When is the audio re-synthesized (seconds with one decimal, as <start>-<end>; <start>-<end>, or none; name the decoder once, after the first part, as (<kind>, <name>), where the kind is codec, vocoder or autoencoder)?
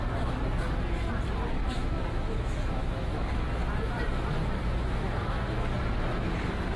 1.6-3.3 (autoencoder, DAC-VAE); 4.6-5.4